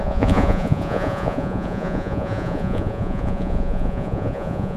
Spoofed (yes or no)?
yes